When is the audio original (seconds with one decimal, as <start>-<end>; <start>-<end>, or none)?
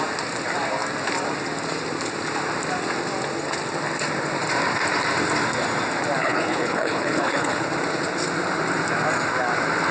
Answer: 0.0-6.2; 7.7-9.9